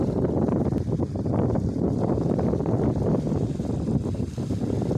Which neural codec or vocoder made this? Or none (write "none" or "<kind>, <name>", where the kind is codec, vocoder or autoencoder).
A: none